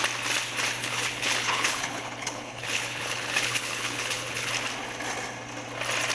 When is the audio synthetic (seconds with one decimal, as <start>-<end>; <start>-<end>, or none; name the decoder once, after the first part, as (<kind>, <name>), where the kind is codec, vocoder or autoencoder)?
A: 0.8-4.5 (codec, HILCodec)